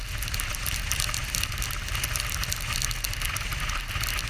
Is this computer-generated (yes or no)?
no